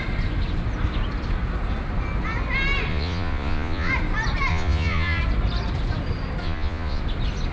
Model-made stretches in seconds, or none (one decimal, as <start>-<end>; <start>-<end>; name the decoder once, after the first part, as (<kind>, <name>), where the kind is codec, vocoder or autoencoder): 2.9-3.9 (vocoder, Vocos); 4.5-5.2; 6.4-7.0